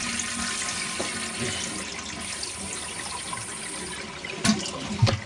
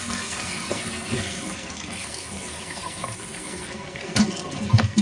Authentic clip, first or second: first